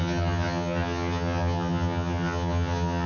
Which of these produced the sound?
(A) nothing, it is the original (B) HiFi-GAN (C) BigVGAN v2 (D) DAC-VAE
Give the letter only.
B